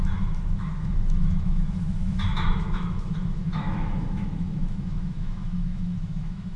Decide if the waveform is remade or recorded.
remade